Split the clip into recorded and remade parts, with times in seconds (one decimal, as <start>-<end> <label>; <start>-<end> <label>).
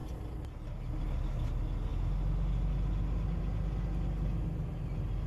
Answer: 0.0-5.3 recorded